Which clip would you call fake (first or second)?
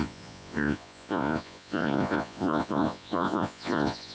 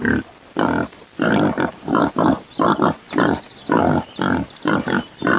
first